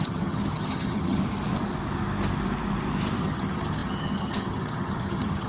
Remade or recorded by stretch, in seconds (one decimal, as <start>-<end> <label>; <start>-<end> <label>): 0.0-1.2 remade; 1.2-3.2 recorded; 3.2-5.5 remade